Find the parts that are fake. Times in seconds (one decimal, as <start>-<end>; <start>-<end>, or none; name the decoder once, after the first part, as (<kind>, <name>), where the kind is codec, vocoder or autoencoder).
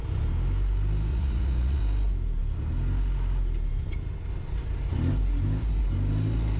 1.1-1.8 (vocoder, Vocos)